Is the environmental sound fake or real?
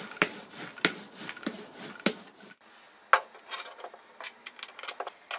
real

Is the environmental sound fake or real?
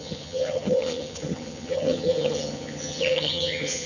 fake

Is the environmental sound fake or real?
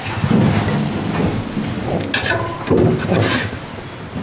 real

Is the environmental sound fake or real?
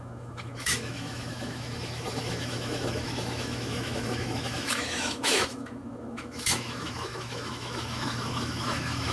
fake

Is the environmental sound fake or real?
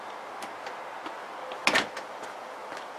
real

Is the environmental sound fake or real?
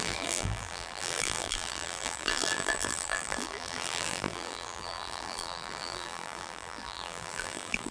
fake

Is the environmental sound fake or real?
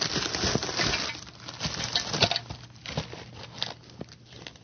real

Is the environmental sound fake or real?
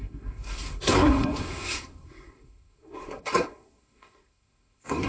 fake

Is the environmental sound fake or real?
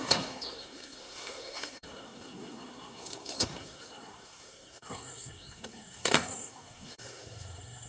fake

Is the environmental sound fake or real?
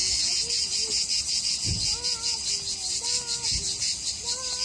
real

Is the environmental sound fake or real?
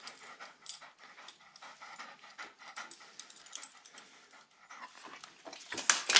real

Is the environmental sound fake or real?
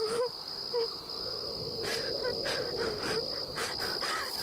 real